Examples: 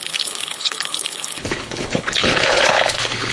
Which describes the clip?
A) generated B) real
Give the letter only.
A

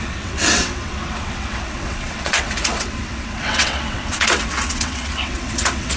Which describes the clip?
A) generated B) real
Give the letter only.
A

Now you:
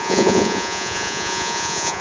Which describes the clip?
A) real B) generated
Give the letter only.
B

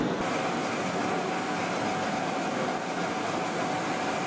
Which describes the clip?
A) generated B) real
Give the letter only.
B